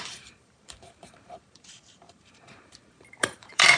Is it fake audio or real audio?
fake